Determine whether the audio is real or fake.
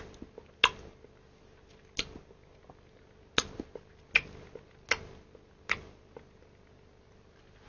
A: real